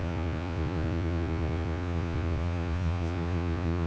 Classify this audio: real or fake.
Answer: fake